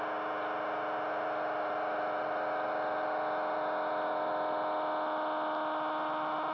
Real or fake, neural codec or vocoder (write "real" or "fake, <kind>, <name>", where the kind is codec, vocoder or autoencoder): real